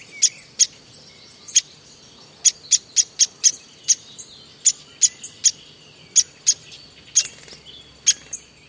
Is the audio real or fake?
real